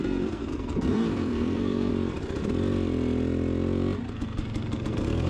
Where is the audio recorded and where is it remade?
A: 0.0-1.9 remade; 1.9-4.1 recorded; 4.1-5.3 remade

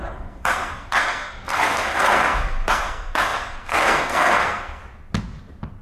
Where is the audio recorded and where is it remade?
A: 0.0-4.8 remade; 4.8-5.8 recorded